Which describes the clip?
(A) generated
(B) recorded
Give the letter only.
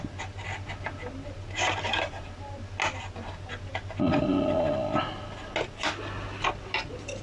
B